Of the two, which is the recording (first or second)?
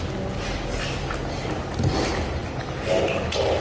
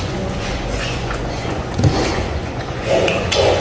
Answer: first